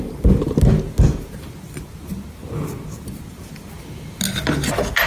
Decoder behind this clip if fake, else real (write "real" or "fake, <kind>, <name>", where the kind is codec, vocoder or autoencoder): real